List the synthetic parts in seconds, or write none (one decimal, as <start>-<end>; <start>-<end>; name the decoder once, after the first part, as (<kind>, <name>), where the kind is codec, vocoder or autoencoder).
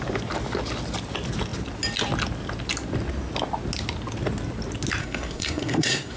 5.0-6.2 (codec, SNAC)